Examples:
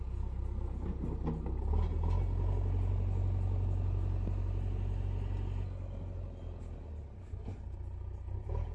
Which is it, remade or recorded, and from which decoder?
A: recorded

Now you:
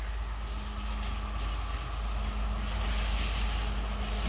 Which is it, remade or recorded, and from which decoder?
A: recorded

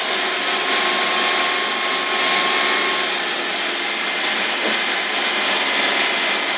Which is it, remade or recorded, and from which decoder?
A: recorded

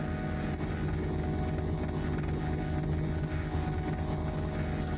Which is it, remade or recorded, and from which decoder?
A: recorded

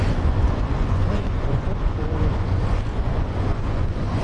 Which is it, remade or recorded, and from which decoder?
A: remade, vocoder, Vocos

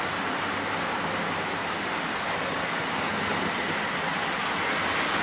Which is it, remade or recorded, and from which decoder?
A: recorded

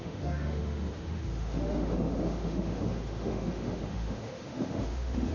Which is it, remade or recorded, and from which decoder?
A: remade, autoencoder, DAC-VAE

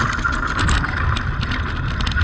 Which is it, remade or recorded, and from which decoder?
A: recorded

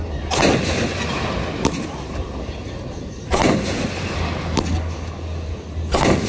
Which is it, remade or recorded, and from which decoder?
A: recorded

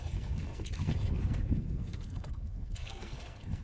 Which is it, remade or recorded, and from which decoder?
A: remade, codec, SNAC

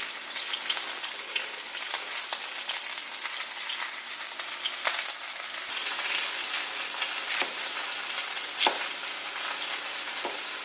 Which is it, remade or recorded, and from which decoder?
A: recorded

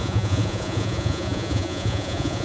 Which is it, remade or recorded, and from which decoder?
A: remade, vocoder, Vocos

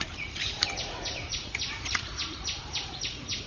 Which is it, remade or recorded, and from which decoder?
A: remade, vocoder, Vocos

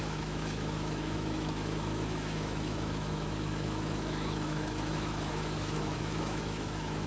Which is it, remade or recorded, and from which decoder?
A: remade, autoencoder, DAC-VAE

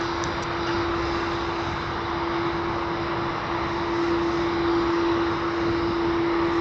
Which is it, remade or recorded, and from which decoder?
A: recorded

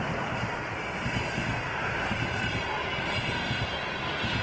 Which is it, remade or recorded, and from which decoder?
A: recorded